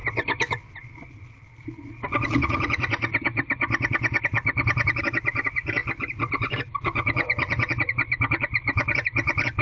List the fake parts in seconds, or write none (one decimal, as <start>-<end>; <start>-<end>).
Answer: none